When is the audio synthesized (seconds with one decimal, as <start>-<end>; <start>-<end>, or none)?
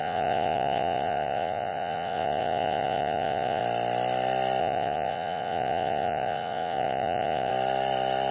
0.0-3.6; 4.6-7.5